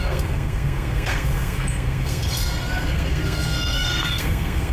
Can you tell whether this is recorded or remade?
remade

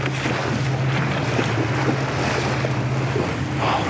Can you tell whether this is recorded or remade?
recorded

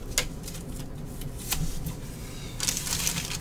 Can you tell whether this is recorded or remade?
recorded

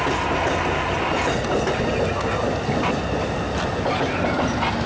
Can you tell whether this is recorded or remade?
recorded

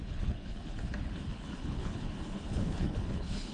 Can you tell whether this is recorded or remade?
remade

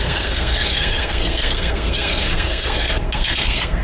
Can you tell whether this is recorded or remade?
remade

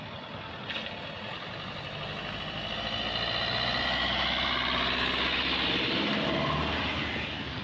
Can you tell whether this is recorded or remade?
recorded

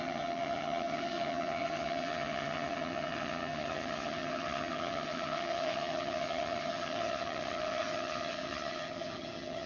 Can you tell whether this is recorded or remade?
remade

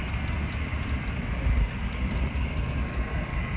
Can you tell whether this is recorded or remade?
recorded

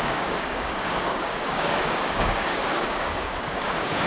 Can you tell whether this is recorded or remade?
remade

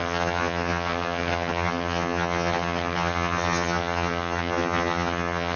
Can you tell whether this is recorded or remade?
remade